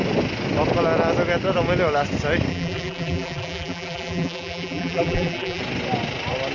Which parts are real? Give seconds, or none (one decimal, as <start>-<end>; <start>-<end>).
0.0-2.5; 5.6-6.5